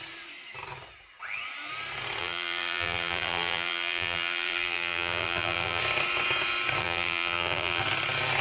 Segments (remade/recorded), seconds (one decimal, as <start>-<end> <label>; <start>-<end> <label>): 0.0-2.2 recorded; 2.2-5.8 remade; 5.8-6.8 recorded; 6.8-7.8 remade; 7.8-8.4 recorded